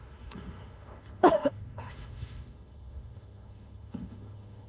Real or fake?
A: fake